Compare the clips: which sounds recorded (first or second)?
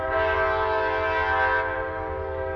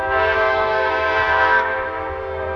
first